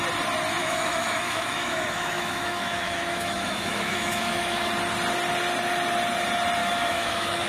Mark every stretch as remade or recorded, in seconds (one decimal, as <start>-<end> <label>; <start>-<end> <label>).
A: 0.0-0.6 recorded; 0.6-4.7 remade; 4.7-6.6 recorded; 6.6-7.5 remade